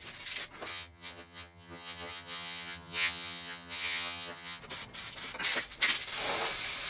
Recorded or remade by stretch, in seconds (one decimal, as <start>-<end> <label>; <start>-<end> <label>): 0.0-0.7 recorded; 0.7-4.6 remade; 4.6-6.9 recorded